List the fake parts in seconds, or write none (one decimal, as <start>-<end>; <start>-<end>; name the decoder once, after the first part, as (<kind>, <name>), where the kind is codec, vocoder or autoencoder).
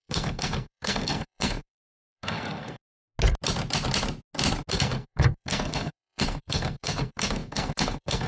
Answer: 0.0-2.8 (codec, SNAC); 4.7-8.3